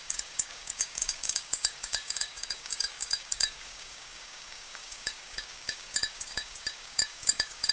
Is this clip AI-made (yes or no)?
yes